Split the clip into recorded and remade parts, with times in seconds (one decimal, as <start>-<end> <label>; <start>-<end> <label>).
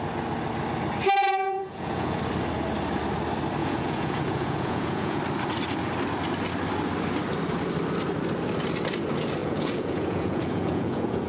0.0-1.2 recorded; 1.2-2.2 remade; 2.2-3.6 recorded; 3.6-5.2 remade; 5.2-9.4 recorded; 9.4-11.3 remade